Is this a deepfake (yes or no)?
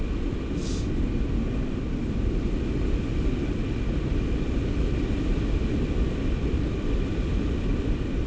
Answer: no